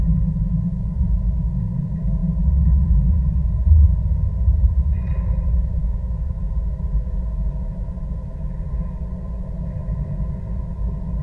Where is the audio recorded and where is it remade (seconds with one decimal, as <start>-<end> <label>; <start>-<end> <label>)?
0.0-5.8 recorded; 5.8-6.4 remade; 6.4-11.2 recorded